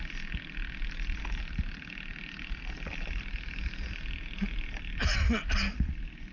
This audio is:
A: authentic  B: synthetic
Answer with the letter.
A